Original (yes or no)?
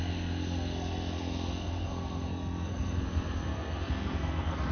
no